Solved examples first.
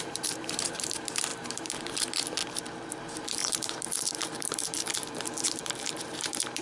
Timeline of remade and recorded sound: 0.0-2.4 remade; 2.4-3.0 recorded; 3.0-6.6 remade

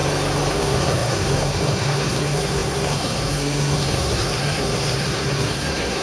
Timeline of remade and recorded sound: 0.0-0.5 recorded; 0.5-6.0 remade

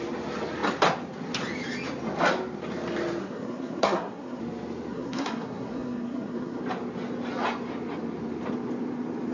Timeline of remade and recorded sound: 0.0-3.2 recorded; 3.2-4.4 remade; 4.4-4.9 recorded; 4.9-6.6 remade; 6.6-9.3 recorded

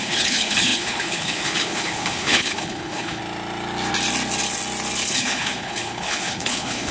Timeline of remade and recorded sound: 0.0-3.2 remade; 3.2-5.1 recorded; 5.1-6.9 remade

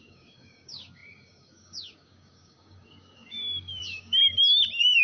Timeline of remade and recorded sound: 0.0-4.2 remade; 4.2-5.0 recorded